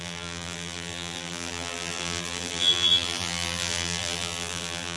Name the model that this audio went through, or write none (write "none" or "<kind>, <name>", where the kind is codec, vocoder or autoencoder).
vocoder, BigVGAN v2